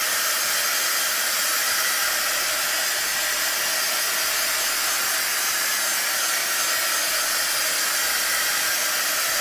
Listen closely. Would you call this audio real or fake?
real